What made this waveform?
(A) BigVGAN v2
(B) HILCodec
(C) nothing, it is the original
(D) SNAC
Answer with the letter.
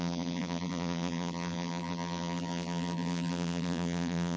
A